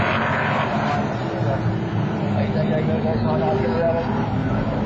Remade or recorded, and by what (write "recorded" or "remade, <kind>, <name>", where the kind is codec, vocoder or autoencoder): recorded